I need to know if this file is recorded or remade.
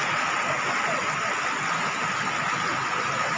recorded